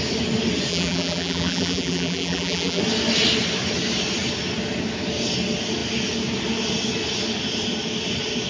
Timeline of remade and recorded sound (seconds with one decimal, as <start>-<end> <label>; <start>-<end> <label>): 0.0-0.7 recorded; 0.7-2.8 remade; 2.8-8.5 recorded